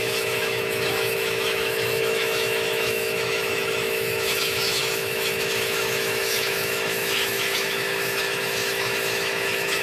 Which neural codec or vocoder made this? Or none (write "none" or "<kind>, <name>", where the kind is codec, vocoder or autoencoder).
autoencoder, DAC-VAE